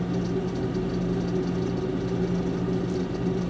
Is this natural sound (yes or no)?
yes